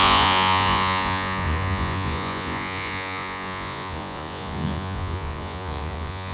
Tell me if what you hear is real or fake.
fake